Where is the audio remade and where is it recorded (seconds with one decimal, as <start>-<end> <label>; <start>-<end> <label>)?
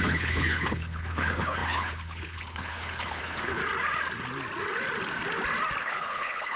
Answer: 0.0-3.6 remade; 3.6-5.8 recorded; 5.8-6.6 remade